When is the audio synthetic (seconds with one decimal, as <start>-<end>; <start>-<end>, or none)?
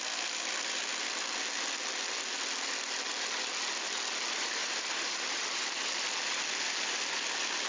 4.6-5.8